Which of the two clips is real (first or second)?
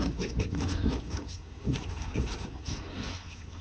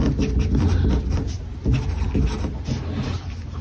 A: second